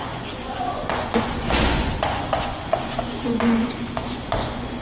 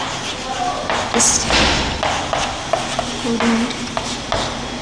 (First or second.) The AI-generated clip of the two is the first